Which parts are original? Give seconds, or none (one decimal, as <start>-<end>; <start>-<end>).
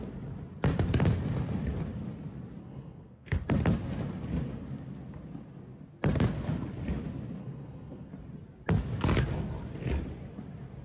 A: 0.0-2.6; 3.4-7.4; 8.1-10.8